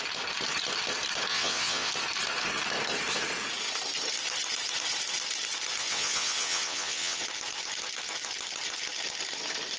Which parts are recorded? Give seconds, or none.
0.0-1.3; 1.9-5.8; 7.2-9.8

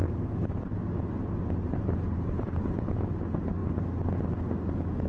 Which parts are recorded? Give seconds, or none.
0.0-5.1

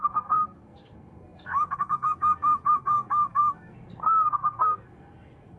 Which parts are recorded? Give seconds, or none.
none

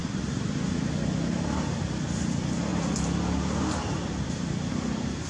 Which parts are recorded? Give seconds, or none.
0.0-5.3

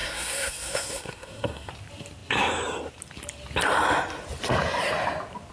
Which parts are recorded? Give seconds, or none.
1.7-5.5

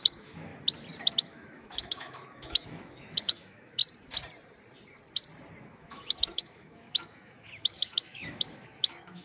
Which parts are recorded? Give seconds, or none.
0.5-1.1; 3.8-5.6

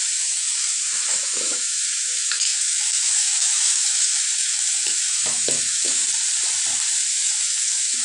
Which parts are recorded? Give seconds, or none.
6.0-7.1

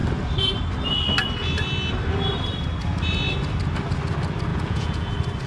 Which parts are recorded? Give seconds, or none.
0.0-4.5; 5.1-5.5